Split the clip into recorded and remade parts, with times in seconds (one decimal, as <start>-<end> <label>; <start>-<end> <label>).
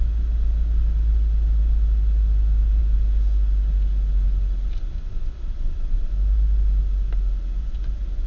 0.0-7.6 recorded; 7.6-8.3 remade